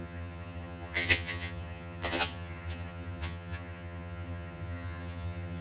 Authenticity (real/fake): fake